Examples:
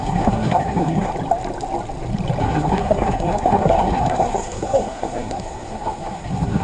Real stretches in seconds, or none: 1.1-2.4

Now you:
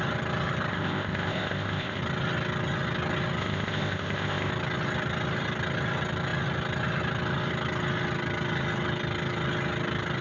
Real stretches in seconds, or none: 0.0-0.7; 2.0-3.4; 4.5-10.2

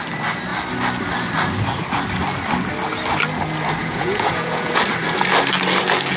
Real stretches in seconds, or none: 0.0-3.8; 4.8-6.2

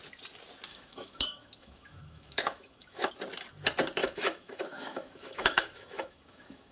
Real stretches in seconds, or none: 0.0-0.7; 3.1-4.0

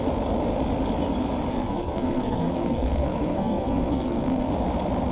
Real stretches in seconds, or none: 0.0-1.5; 4.5-5.1

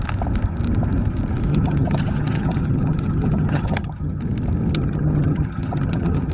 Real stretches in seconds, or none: 0.0-1.5; 4.2-4.7